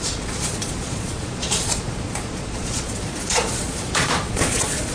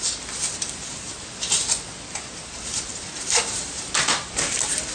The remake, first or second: first